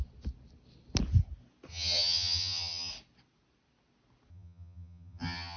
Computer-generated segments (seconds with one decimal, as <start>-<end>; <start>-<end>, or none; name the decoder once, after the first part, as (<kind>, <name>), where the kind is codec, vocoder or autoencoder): 1.7-2.9 (vocoder, HiFi-GAN); 4.3-5.6

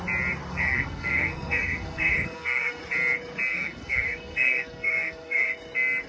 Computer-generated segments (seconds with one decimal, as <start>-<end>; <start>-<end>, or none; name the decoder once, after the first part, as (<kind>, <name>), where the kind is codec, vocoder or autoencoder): 0.5-2.8 (codec, SNAC); 3.5-5.5

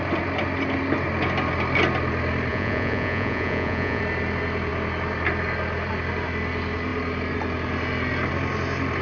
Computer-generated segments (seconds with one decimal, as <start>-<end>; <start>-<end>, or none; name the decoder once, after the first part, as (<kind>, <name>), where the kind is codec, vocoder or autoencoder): 2.5-4.0 (vocoder, Vocos)

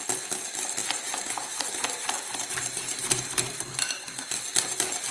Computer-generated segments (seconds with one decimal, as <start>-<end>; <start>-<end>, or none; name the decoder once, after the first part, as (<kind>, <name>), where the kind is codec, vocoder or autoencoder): 3.0-3.7 (vocoder, BigVGAN v2)

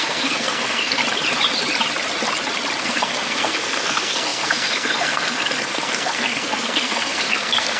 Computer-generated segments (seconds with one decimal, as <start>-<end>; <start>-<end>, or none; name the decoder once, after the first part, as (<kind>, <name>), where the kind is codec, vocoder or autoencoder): 0.0-1.0 (codec, SNAC); 2.8-7.8

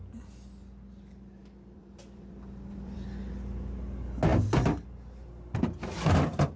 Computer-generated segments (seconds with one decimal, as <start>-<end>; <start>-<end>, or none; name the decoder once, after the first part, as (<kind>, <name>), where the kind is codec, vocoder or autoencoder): 1.4-3.2 (vocoder, BigVGAN v2)